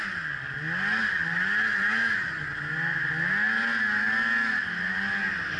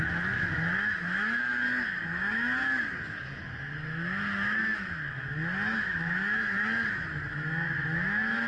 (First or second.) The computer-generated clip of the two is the second